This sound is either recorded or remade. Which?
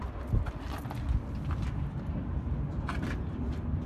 recorded